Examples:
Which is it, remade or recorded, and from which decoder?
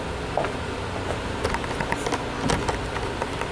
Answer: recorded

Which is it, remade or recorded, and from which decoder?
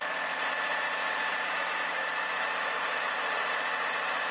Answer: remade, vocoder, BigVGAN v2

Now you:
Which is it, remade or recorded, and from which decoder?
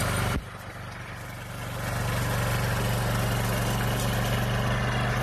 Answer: recorded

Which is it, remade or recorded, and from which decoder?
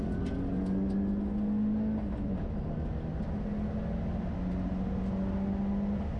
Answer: recorded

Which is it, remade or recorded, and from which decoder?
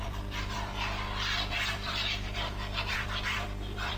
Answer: remade, vocoder, BigVGAN v2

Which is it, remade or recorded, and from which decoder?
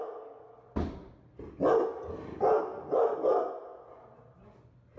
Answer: recorded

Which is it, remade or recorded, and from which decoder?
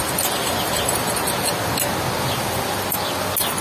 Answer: recorded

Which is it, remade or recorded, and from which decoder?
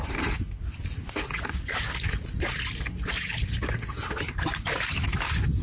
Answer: recorded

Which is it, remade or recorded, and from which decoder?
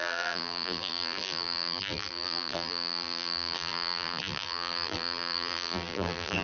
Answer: remade, vocoder, BigVGAN v2